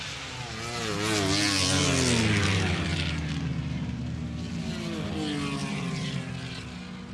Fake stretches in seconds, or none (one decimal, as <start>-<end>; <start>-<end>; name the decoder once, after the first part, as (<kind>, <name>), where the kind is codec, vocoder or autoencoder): 2.4-4.0 (vocoder, BigVGAN v2); 5.6-6.3